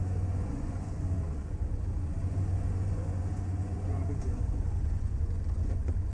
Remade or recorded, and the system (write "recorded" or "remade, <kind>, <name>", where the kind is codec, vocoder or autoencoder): remade, vocoder, Vocos